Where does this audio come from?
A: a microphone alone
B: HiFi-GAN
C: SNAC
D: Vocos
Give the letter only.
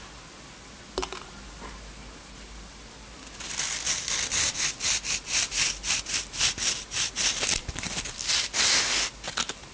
A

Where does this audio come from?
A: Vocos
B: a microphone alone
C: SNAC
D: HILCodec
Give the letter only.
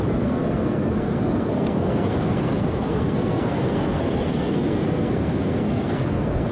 C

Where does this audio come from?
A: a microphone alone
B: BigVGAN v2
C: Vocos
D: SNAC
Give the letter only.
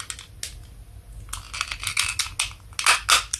A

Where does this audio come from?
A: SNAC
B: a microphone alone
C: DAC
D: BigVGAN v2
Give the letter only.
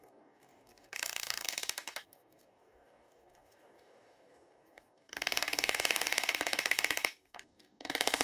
C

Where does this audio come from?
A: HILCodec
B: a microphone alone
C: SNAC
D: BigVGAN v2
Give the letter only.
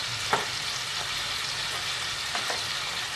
B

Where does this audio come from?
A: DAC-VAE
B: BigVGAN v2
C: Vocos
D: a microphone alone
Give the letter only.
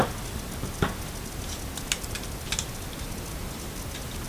D